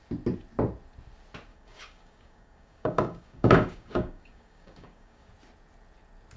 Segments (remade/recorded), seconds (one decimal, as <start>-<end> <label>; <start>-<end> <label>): 0.0-1.5 recorded; 1.5-5.3 remade; 5.3-6.4 recorded

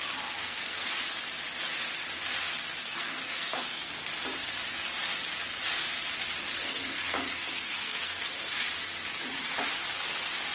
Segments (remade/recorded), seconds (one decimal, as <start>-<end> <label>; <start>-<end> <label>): 0.0-0.4 recorded; 0.4-1.0 remade; 1.0-2.8 recorded; 2.8-3.9 remade; 3.9-6.5 recorded; 6.5-8.3 remade; 8.3-10.5 recorded

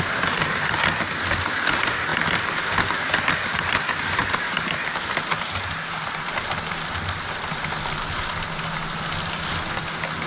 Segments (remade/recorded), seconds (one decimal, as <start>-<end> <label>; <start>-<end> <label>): 0.0-10.3 recorded

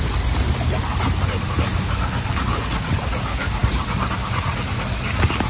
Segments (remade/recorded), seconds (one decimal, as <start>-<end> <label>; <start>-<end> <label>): 0.0-5.5 recorded

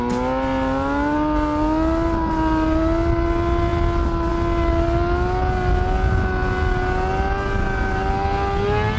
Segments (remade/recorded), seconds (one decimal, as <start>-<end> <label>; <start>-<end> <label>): 0.0-9.0 recorded

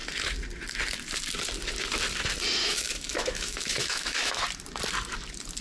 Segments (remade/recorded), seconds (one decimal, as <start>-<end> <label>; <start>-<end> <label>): 0.0-2.6 recorded; 2.6-4.4 remade; 4.4-5.6 recorded

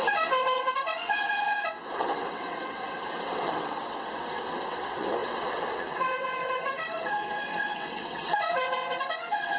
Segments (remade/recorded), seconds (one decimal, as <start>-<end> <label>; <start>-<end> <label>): 0.0-9.6 remade

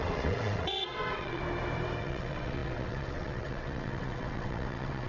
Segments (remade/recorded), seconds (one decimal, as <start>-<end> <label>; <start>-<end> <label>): 0.0-1.4 remade; 1.4-2.0 recorded; 2.0-5.1 remade